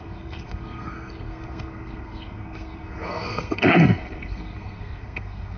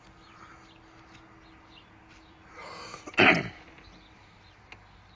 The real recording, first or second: second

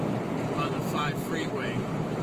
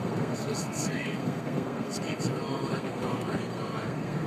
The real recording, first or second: first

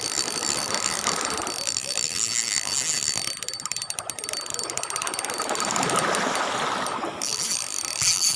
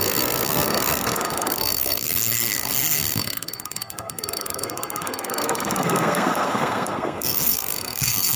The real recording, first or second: first